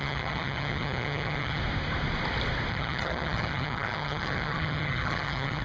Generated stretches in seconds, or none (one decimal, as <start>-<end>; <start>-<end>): 0.0-1.6; 2.7-5.6